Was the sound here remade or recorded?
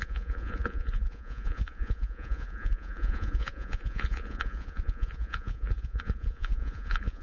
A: remade